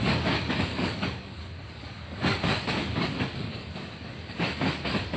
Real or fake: fake